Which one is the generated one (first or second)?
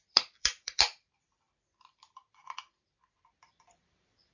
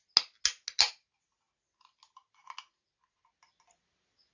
first